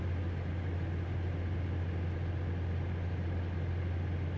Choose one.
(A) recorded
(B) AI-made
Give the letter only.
A